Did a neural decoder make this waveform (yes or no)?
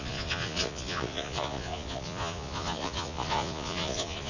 yes